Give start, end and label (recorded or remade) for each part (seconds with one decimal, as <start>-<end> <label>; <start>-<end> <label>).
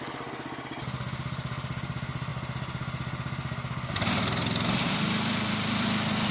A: 0.0-6.3 recorded